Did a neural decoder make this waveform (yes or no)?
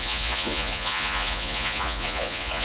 yes